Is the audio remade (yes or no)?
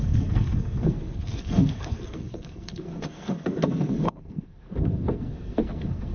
yes